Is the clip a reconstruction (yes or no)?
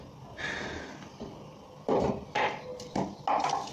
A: no